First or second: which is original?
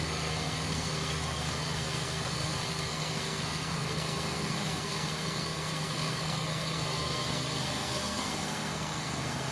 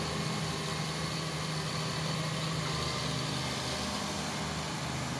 second